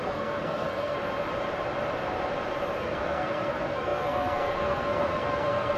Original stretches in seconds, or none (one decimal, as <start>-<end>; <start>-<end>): 1.0-2.8